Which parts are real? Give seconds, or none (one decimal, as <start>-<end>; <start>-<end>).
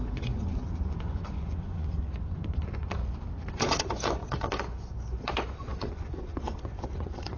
3.0-3.5